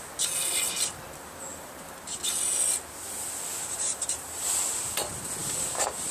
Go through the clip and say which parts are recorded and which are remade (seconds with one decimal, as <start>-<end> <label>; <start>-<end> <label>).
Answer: 0.0-1.5 recorded; 1.5-2.2 remade; 2.2-3.5 recorded; 3.5-4.5 remade; 4.5-5.4 recorded; 5.4-6.1 remade